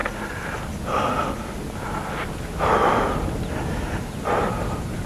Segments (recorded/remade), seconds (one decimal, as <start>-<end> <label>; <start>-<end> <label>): 0.0-5.1 recorded